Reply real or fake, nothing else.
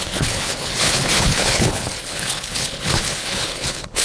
fake